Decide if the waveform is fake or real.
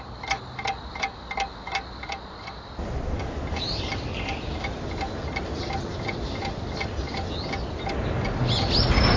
real